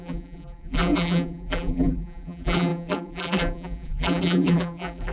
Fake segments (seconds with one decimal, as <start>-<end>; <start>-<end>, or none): 0.0-5.1